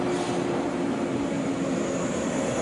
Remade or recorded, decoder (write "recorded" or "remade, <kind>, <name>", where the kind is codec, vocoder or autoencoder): recorded